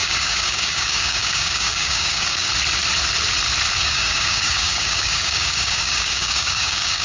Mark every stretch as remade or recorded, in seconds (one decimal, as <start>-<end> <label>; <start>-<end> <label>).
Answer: 0.0-2.5 remade; 2.5-3.8 recorded; 3.8-7.0 remade